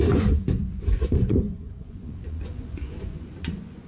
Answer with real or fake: fake